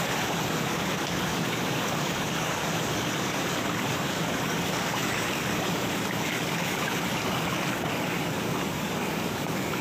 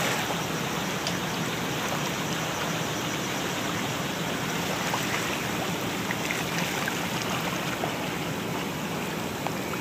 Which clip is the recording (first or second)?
second